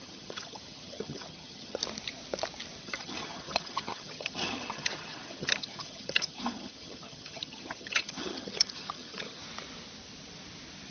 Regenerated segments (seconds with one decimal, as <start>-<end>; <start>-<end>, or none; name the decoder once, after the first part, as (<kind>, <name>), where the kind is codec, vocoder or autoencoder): 0.0-1.8 (vocoder, HiFi-GAN); 2.8-9.4